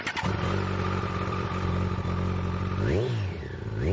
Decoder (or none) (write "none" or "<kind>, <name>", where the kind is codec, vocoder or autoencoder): none